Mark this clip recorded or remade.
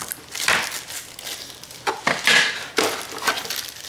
recorded